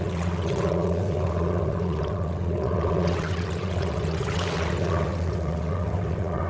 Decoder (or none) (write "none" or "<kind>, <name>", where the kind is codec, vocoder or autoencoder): vocoder, WaveNeXt